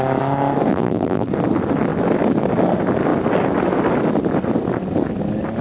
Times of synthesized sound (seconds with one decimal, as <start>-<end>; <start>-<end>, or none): 0.7-1.3